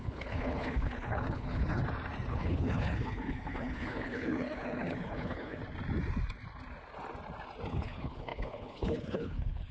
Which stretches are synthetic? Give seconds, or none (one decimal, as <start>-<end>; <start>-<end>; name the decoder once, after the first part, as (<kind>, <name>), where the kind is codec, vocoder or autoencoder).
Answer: 0.0-1.8 (codec, HILCodec); 2.3-5.6; 7.7-9.7